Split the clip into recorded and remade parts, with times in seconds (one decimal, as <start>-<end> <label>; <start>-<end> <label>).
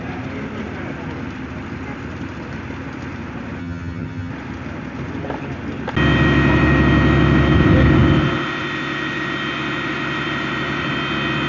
0.0-3.6 recorded; 3.6-4.3 remade; 4.3-11.5 recorded